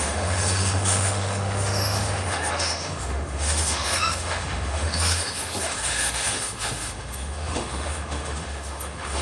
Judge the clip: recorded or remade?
remade